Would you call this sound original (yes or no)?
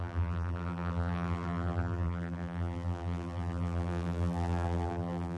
no